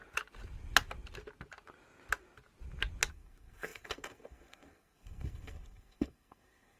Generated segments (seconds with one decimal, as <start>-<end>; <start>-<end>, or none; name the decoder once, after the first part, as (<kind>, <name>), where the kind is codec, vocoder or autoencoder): 3.1-6.8 (codec, SNAC)